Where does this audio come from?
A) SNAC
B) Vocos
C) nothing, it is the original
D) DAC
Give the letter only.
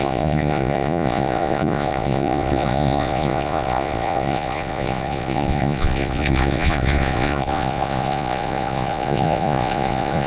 B